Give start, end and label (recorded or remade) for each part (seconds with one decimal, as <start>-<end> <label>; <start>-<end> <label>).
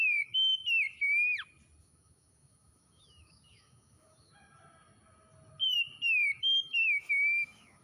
0.0-0.5 remade; 0.5-1.8 recorded; 1.8-4.3 remade; 4.3-6.4 recorded; 6.4-7.8 remade